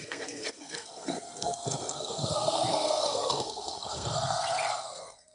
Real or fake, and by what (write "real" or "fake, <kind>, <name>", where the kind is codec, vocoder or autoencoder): fake, codec, SNAC